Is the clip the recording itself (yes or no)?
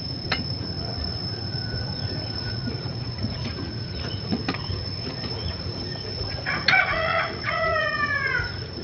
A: no